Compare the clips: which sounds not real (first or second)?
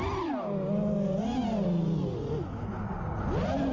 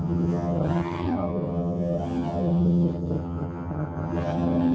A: second